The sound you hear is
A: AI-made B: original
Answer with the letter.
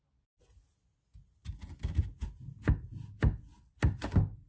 B